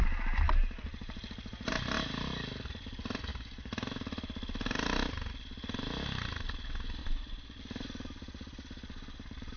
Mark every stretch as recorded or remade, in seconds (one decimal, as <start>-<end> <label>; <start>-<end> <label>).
0.0-7.0 recorded; 7.0-7.6 remade; 7.6-9.6 recorded